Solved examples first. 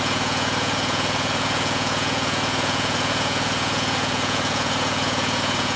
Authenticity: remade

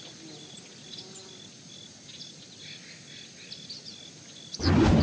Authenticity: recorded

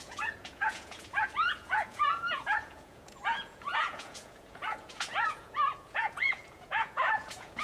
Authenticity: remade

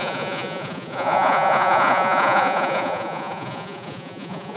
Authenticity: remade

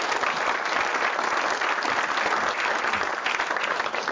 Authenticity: recorded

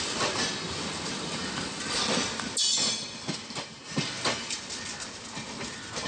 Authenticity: recorded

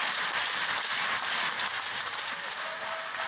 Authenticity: recorded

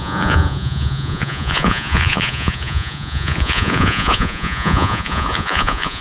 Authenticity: remade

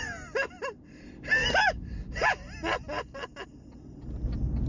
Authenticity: recorded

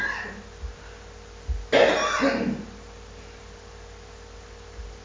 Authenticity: recorded